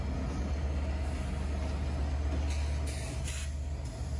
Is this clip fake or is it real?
real